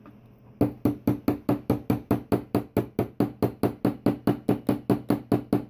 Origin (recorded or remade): recorded